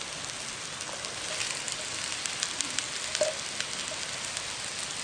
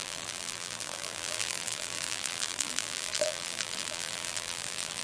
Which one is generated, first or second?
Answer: second